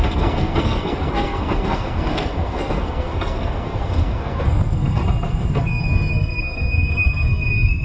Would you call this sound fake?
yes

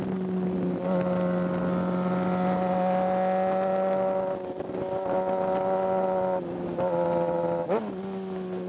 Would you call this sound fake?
no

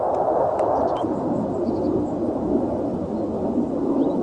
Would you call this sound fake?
yes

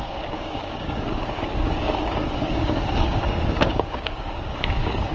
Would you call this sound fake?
yes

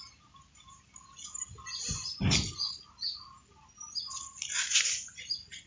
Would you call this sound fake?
no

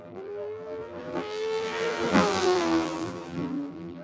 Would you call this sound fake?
yes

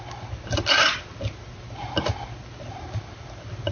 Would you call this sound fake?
no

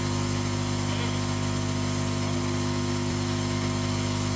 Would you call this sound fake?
no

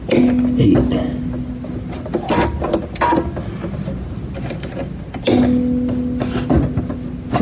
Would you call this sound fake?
no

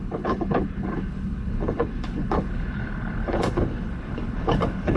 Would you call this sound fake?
yes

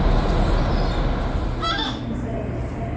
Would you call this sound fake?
no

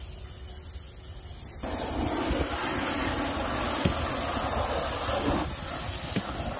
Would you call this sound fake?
no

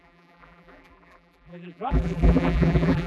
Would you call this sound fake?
yes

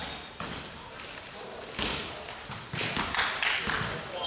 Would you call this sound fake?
no